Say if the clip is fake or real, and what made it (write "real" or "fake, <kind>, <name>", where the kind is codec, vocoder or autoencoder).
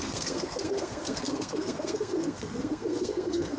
fake, codec, SNAC